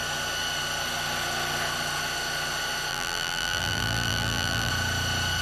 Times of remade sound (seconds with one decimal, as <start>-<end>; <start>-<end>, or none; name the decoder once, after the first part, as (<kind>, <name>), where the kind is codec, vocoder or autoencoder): 2.9-4.7 (vocoder, BigVGAN v2)